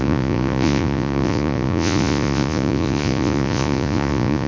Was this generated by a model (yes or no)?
yes